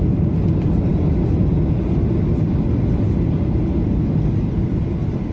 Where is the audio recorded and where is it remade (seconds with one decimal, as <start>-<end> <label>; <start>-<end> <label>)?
0.0-5.3 recorded